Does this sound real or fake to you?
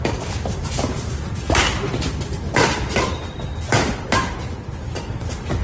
real